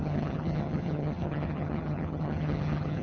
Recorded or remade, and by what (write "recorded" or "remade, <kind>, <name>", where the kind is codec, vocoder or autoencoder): remade, vocoder, HiFi-GAN